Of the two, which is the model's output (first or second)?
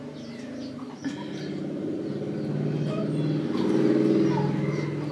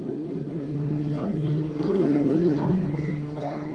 second